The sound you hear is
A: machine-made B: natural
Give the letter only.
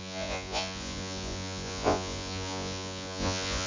A